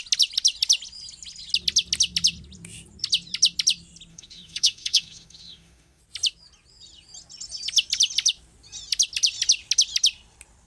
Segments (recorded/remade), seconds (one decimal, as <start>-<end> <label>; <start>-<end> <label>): 0.0-4.1 recorded; 4.1-6.0 remade; 6.0-10.7 recorded